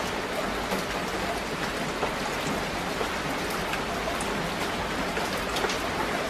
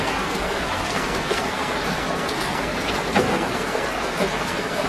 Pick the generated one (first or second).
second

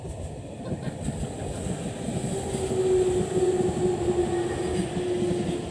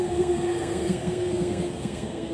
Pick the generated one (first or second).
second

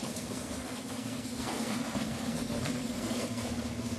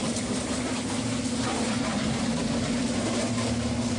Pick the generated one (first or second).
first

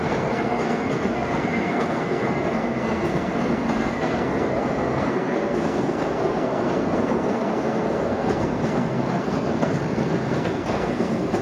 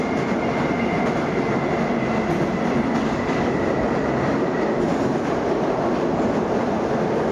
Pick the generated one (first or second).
first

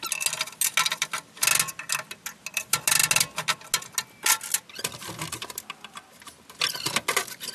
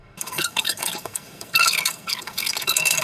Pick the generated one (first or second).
second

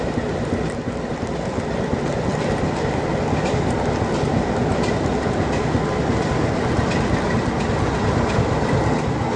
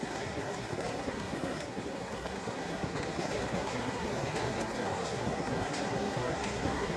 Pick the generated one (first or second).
second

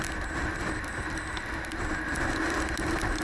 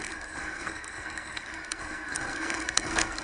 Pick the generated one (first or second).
second